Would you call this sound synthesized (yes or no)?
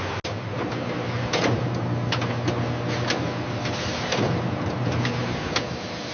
no